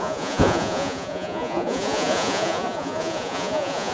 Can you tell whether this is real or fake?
fake